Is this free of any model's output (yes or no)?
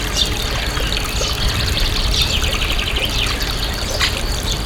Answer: yes